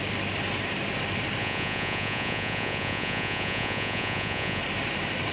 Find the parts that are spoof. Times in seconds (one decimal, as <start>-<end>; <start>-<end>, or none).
1.4-4.6